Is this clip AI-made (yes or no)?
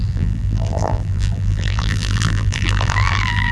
yes